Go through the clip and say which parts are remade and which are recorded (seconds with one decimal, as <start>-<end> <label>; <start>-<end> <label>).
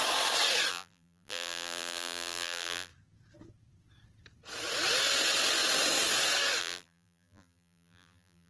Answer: 0.0-0.7 recorded; 0.7-2.9 remade; 2.9-6.6 recorded; 6.6-8.5 remade